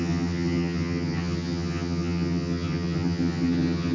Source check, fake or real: fake